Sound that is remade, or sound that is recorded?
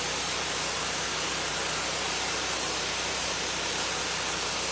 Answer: recorded